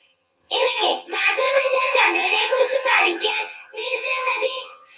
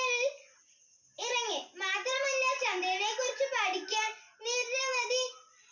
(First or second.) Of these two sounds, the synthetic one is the first